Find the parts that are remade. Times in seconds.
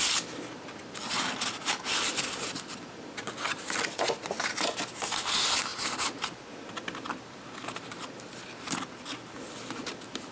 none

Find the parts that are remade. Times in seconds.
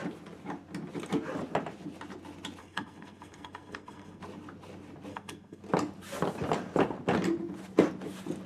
2.6-4.2 (codec, SNAC); 5.1-5.6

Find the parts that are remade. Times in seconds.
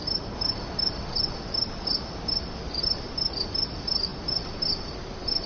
none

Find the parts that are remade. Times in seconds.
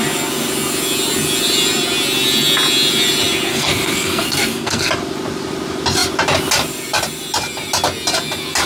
3.5-4.9 (codec, SNAC)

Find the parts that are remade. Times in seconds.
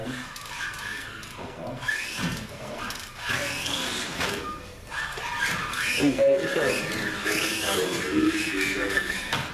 0.0-5.2 (codec, SNAC); 5.7-6.7; 7.2-9.5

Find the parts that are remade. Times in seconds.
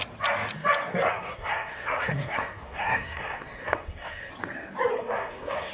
0.9-4.3 (codec, SNAC); 4.9-5.7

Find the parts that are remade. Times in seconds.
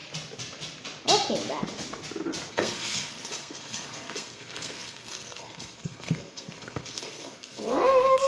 2.5-8.3 (codec, SNAC)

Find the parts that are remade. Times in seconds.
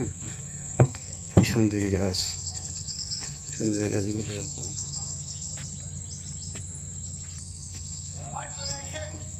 0.0-5.5 (codec, SNAC); 7.4-9.4